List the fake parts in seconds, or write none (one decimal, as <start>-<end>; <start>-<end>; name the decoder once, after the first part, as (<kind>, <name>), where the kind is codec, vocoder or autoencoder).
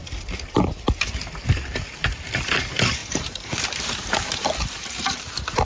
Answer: 3.0-3.8 (vocoder, BigVGAN v2)